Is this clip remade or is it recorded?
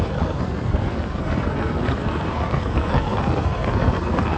remade